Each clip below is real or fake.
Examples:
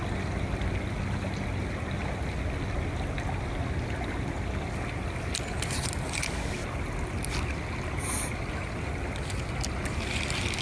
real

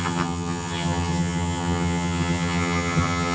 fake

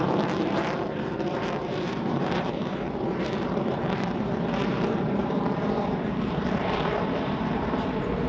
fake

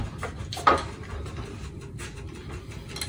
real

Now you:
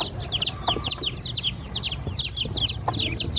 real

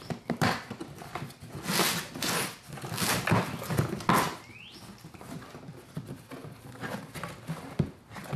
real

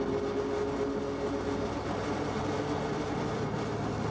real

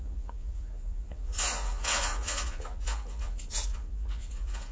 fake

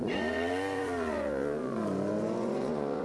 fake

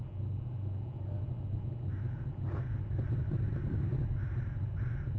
real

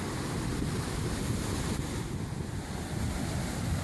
real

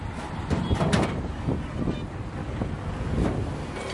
real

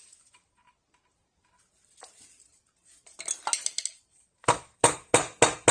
real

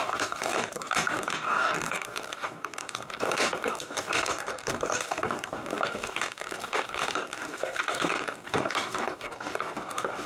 fake